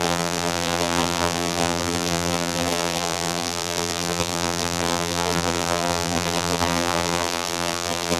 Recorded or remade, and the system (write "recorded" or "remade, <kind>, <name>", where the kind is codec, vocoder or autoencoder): remade, vocoder, BigVGAN v2